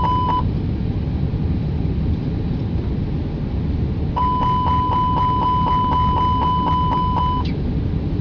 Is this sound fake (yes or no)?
no